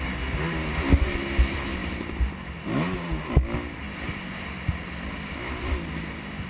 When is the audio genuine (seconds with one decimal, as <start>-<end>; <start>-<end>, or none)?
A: 0.0-6.5